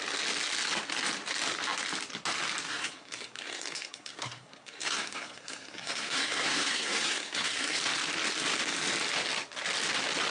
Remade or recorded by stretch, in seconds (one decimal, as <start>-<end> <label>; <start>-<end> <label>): 0.0-2.7 recorded; 2.7-7.8 remade; 7.8-10.3 recorded